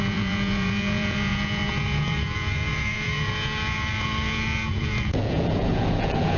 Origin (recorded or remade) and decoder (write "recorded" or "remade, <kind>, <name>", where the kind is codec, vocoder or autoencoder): remade, vocoder, Vocos